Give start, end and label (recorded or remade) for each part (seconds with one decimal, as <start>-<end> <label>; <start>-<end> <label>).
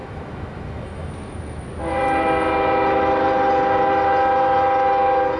0.0-1.1 remade; 1.1-5.4 recorded